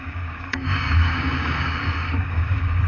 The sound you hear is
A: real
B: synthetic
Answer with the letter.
B